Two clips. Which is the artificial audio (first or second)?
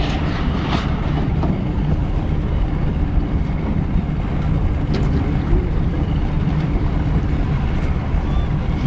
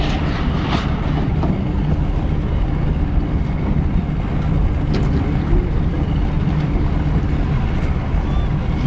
first